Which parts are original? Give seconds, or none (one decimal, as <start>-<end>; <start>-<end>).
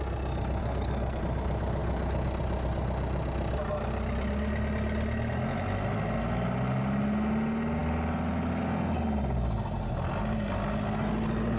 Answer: 0.0-0.6; 1.2-11.6